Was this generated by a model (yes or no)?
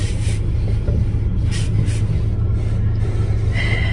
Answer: no